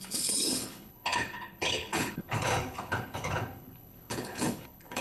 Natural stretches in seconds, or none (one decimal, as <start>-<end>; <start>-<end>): none